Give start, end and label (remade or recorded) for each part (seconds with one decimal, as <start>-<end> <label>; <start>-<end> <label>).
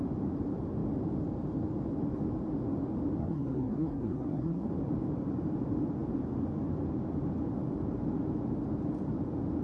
0.0-3.2 recorded; 3.2-4.7 remade; 4.7-9.6 recorded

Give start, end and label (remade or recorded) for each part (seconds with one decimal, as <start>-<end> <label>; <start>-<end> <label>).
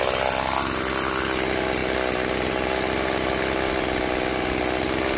0.0-5.2 recorded